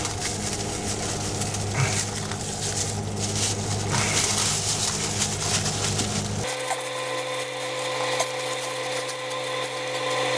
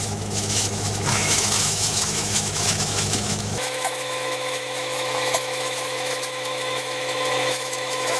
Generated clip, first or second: second